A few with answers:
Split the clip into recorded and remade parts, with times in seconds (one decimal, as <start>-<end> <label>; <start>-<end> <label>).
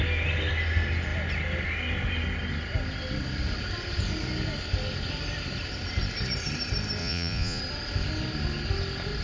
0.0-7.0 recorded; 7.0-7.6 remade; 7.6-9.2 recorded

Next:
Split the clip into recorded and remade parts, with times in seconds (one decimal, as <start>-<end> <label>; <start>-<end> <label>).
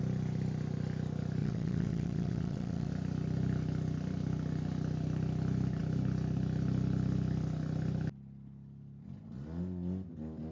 0.0-1.4 recorded; 1.4-2.9 remade; 2.9-10.5 recorded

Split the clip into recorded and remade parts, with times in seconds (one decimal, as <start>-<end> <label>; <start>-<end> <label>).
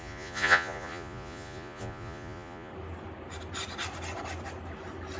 0.0-2.7 remade; 2.7-5.2 recorded